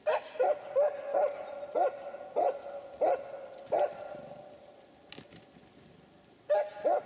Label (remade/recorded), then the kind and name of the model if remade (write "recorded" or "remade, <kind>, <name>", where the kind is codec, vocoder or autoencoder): recorded